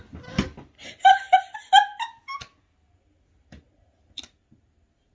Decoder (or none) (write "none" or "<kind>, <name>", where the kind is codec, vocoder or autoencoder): none